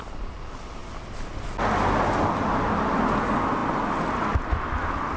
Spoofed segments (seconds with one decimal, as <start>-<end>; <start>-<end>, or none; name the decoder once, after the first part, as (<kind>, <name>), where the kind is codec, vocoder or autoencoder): 0.8-1.6 (vocoder, BigVGAN v2)